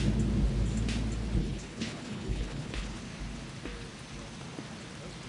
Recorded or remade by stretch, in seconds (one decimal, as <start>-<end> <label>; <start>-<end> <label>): 0.0-1.4 recorded; 1.4-3.0 remade; 3.0-5.3 recorded